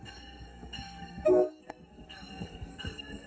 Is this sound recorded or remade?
remade